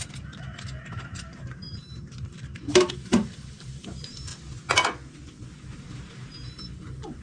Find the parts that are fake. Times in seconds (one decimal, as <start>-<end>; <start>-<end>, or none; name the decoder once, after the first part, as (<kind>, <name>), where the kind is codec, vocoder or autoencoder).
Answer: 0.0-4.3 (vocoder, BigVGAN v2); 5.3-7.2